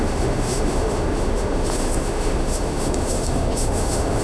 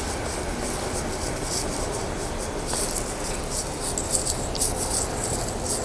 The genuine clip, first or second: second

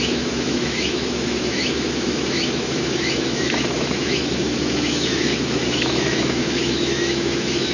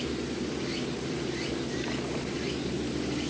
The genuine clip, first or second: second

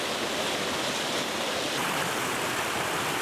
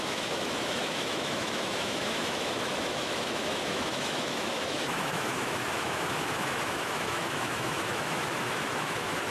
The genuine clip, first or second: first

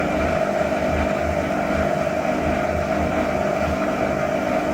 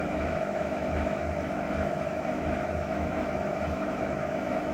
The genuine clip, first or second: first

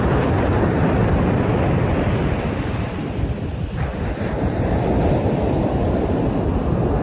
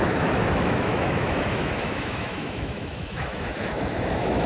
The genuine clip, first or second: first